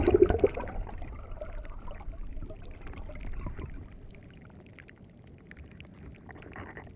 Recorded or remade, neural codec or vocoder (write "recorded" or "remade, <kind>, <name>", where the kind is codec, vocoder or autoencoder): recorded